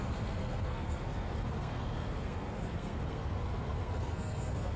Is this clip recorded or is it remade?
remade